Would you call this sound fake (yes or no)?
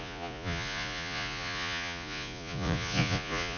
yes